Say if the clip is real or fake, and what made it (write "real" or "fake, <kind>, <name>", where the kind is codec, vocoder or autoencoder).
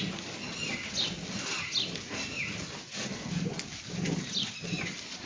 real